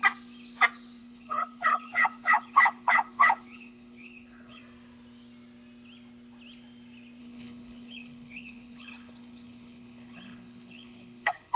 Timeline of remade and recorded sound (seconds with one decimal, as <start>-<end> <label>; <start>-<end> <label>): 0.0-1.0 recorded; 1.0-4.6 remade; 4.6-7.2 recorded; 7.2-11.6 remade